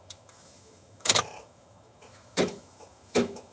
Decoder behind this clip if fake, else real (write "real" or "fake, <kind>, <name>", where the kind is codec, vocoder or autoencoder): fake, autoencoder, DAC-VAE